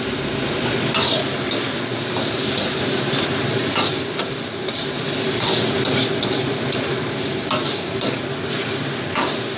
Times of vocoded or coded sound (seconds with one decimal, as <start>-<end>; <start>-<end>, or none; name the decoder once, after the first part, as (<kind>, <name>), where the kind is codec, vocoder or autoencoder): 1.9-3.0 (vocoder, BigVGAN v2); 3.9-4.8; 6.5-7.5